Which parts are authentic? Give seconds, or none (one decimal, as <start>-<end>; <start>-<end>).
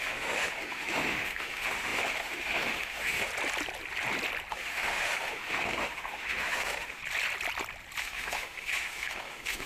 3.3-4.5; 7.0-8.0